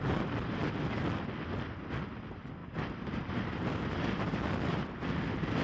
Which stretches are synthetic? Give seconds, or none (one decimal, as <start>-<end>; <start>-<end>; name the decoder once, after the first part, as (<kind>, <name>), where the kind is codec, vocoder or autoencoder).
2.6-4.4 (vocoder, BigVGAN v2)

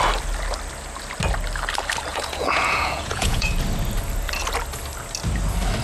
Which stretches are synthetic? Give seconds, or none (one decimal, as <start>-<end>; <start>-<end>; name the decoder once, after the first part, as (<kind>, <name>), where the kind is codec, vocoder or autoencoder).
2.1-3.5 (vocoder, Vocos)

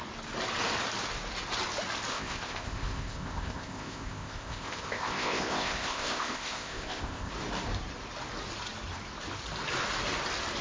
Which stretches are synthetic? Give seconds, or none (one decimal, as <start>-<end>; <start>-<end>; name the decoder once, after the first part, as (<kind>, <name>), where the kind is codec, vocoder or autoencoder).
2.1-7.3 (codec, ZipCodec)

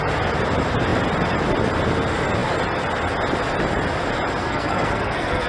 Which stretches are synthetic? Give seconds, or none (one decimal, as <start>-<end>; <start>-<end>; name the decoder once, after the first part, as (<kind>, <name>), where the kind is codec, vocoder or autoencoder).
4.4-5.5 (codec, SNAC)

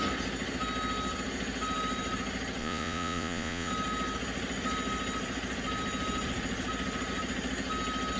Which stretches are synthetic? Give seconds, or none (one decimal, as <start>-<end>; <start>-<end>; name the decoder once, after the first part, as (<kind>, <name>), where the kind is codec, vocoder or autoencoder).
2.6-3.7 (vocoder, Vocos)

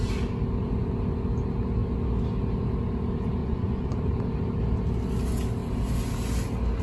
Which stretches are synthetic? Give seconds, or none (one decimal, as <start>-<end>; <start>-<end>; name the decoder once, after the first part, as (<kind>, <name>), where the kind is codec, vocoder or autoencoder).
3.4-4.0 (vocoder, Vocos)